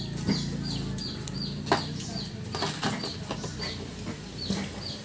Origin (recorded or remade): recorded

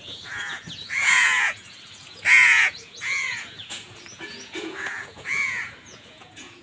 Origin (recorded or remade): remade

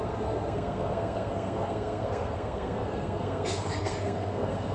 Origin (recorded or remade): remade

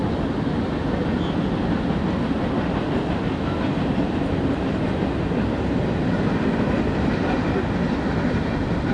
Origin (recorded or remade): recorded